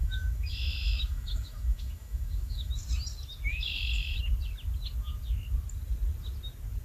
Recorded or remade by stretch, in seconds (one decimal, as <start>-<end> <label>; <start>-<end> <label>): 0.0-2.7 remade; 2.7-3.5 recorded; 3.5-4.2 remade; 4.2-6.8 recorded